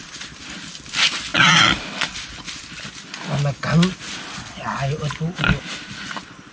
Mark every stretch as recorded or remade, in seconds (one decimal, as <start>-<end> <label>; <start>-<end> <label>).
0.0-6.5 recorded